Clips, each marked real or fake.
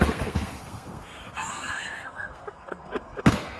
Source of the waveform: fake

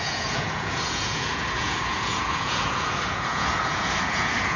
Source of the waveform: fake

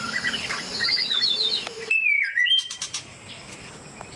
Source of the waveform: real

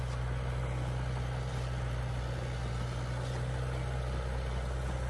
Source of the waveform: real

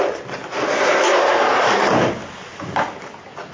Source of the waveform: real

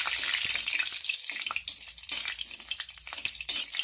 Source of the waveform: real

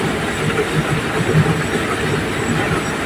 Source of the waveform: real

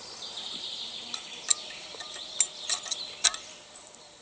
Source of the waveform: real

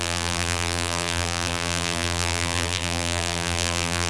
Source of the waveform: fake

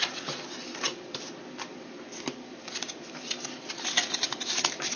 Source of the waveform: real